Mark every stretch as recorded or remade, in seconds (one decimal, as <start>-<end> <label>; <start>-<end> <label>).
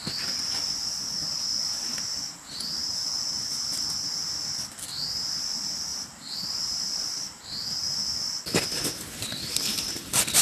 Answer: 0.0-5.9 recorded; 5.9-7.4 remade; 7.4-10.4 recorded